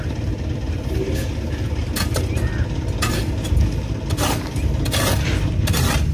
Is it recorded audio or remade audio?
recorded